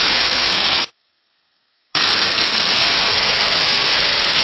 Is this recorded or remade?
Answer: remade